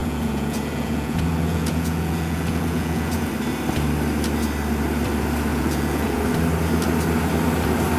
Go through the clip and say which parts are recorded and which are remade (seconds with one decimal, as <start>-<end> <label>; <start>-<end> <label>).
0.0-3.3 remade; 3.3-5.5 recorded; 5.5-6.2 remade; 6.2-8.0 recorded